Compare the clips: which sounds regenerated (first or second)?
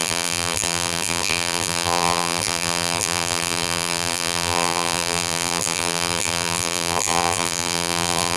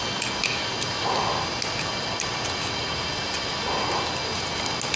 first